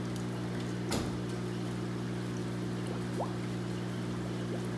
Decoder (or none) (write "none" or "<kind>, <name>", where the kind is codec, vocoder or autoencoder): none